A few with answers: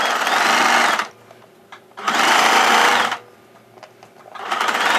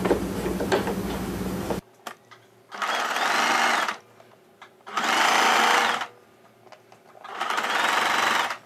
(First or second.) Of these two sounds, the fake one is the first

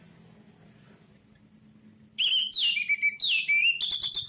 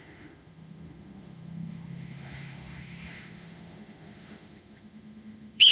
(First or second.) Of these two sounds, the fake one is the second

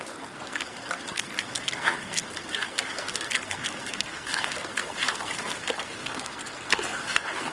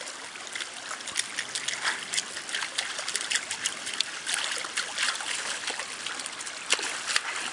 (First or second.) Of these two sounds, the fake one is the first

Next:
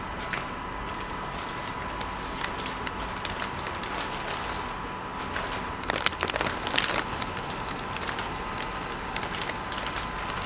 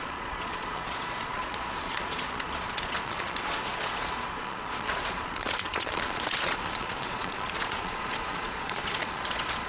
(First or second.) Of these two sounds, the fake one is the second